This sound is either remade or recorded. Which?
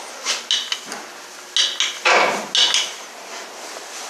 recorded